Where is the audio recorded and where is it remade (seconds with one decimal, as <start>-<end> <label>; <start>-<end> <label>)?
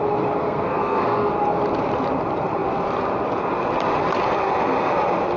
0.0-0.4 recorded; 0.4-1.3 remade; 1.3-5.4 recorded